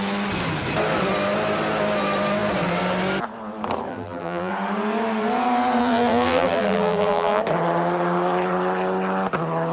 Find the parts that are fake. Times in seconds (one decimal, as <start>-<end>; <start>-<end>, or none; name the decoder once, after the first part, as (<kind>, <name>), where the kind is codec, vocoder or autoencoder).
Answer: 3.9-4.5 (vocoder, BigVGAN v2); 5.8-7.4